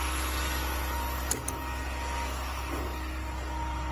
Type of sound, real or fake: real